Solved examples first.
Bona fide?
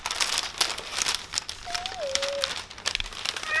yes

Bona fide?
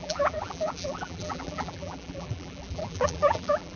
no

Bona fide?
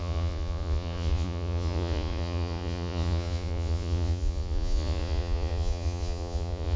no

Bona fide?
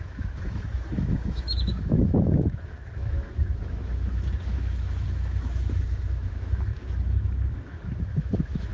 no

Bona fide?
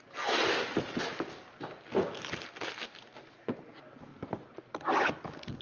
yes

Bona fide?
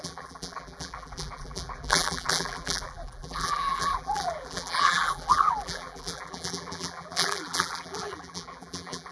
no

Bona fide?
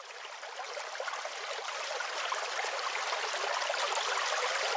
yes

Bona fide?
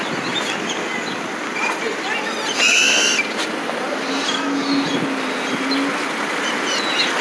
yes